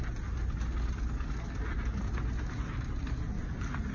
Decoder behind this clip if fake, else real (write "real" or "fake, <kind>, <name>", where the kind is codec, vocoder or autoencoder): real